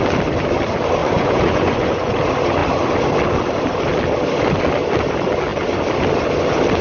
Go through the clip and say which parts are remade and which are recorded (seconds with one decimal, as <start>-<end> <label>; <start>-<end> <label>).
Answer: 0.0-1.0 recorded; 1.0-2.1 remade; 2.1-6.8 recorded